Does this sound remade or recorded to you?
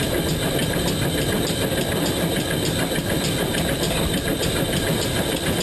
recorded